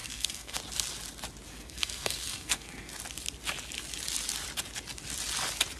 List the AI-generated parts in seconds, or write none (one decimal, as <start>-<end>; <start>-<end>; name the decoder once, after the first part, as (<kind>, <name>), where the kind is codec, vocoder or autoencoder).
0.0-0.6 (codec, SNAC); 1.5-2.9